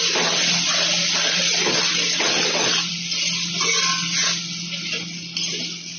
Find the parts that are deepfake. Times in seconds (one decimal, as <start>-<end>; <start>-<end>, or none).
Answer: none